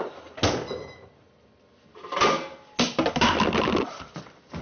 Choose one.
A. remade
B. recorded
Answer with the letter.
B